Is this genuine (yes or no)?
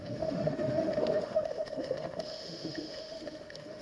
no